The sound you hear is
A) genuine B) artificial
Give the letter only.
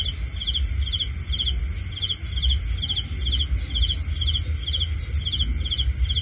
A